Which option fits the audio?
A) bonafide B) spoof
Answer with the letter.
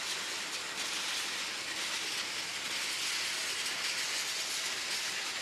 A